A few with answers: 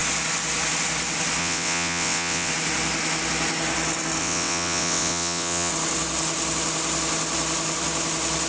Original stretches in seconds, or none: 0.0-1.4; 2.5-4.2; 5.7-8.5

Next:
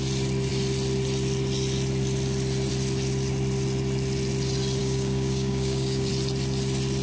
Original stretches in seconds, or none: 0.0-4.8; 6.1-7.0

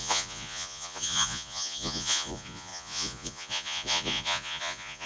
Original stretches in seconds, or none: none

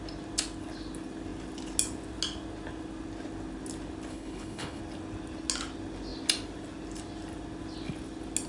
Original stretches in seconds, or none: 0.0-4.1; 4.8-8.5

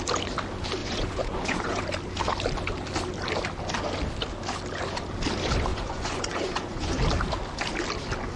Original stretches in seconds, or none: 0.0-0.8; 1.8-5.7; 7.0-8.4

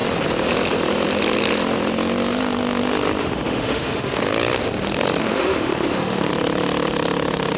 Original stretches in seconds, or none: 0.0-3.2; 4.2-5.2; 6.3-7.6

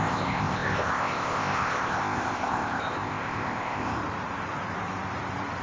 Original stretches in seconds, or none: 4.0-5.6